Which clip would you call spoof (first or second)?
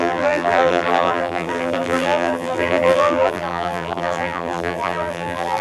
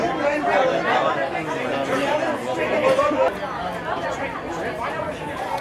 first